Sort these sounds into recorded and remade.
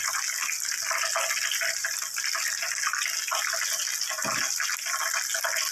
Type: recorded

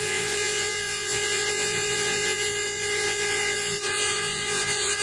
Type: remade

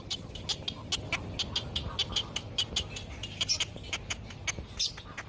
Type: recorded